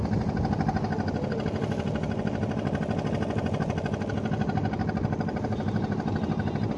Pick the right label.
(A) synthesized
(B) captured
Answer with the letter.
B